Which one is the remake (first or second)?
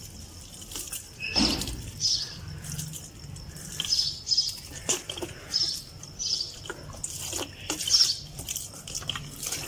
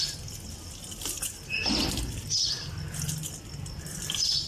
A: first